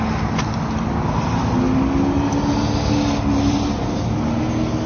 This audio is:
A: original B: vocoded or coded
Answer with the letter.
A